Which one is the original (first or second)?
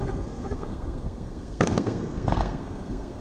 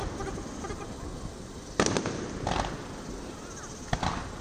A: second